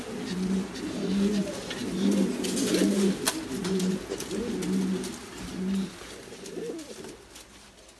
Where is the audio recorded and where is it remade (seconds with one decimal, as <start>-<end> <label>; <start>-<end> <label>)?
0.0-8.0 recorded